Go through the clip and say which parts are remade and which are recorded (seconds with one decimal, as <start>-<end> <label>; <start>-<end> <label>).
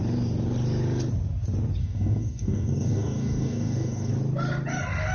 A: 0.0-1.8 recorded; 1.8-4.1 remade; 4.1-5.1 recorded